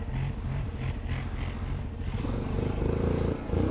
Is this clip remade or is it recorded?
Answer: recorded